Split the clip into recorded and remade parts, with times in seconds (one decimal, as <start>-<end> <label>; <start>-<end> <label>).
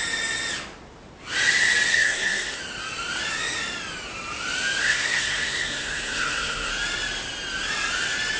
0.0-1.9 recorded; 1.9-2.6 remade; 2.6-4.8 recorded; 4.8-6.7 remade; 6.7-8.4 recorded